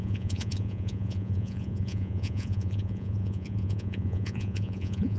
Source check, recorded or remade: remade